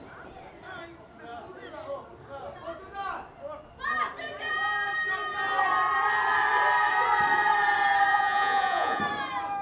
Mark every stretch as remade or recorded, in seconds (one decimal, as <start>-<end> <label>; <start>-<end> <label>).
0.0-8.1 recorded; 8.1-9.0 remade; 9.0-9.6 recorded

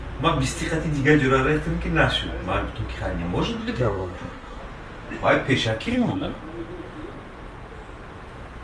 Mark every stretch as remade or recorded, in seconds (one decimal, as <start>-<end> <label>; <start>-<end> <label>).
0.0-3.6 recorded; 3.6-4.6 remade; 4.6-5.9 recorded; 5.9-6.4 remade; 6.4-8.6 recorded

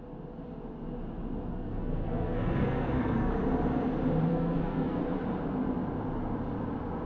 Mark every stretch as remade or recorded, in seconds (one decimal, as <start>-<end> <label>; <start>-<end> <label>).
0.0-1.5 recorded; 1.5-3.3 remade; 3.3-4.3 recorded; 4.3-5.0 remade; 5.0-7.1 recorded

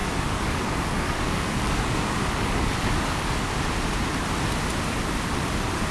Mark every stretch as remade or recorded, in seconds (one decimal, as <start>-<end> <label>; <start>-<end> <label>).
0.0-3.5 remade; 3.5-5.9 recorded

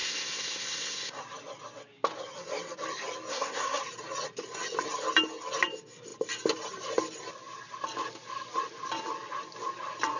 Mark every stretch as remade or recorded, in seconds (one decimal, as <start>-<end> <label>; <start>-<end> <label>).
0.0-1.2 remade; 1.2-3.3 recorded; 3.3-3.8 remade; 3.8-10.2 recorded

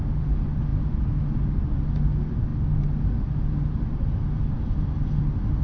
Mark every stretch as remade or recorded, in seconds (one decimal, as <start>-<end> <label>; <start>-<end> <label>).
0.0-5.6 recorded

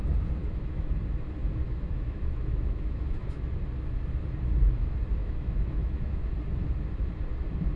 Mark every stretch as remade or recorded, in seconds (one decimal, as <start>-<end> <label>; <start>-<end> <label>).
0.0-0.4 recorded; 0.4-1.0 remade; 1.0-1.6 recorded; 1.6-3.5 remade; 3.5-5.1 recorded; 5.1-6.3 remade; 6.3-7.8 recorded